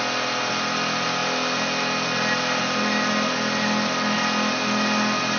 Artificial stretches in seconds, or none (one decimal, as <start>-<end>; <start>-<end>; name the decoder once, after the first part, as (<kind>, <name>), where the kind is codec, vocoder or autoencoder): none